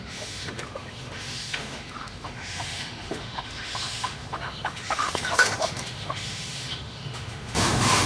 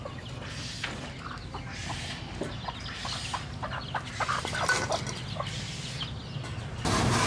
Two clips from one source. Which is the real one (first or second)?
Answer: second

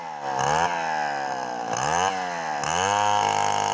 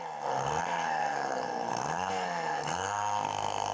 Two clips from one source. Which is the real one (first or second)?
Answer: first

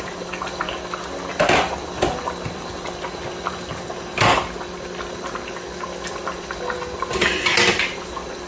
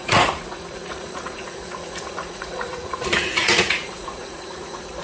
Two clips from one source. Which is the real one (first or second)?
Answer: first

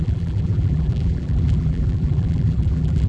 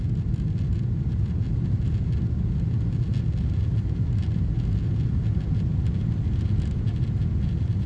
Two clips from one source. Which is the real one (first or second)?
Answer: second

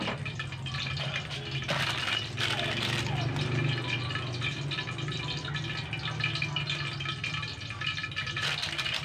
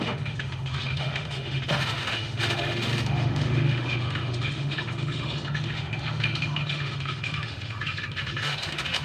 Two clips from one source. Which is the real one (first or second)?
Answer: first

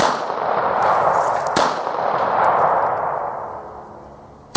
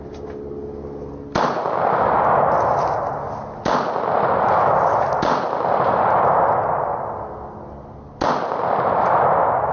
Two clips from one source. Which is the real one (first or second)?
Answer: second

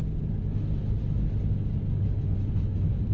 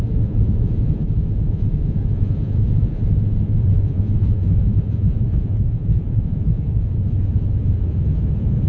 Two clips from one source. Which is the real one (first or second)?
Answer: first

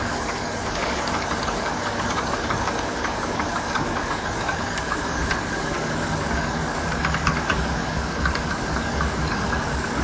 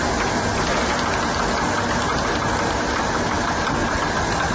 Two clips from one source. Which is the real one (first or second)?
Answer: second